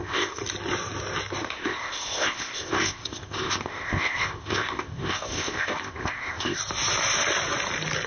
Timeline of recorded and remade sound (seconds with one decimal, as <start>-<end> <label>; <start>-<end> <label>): 0.0-0.4 remade; 0.4-1.4 recorded; 1.4-6.6 remade; 6.6-8.1 recorded

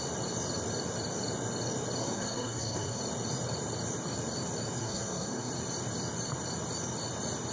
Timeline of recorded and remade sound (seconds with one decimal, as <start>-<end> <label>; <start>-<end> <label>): 0.0-2.0 recorded; 2.0-3.0 remade; 3.0-4.8 recorded; 4.8-5.5 remade; 5.5-7.5 recorded

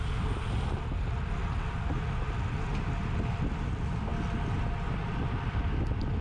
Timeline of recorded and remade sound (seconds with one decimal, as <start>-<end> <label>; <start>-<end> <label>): 0.0-6.2 recorded

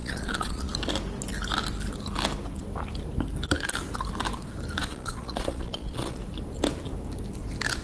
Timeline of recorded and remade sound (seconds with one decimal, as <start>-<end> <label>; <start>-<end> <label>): 0.0-0.7 remade; 0.7-4.8 recorded; 4.8-6.2 remade; 6.2-7.8 recorded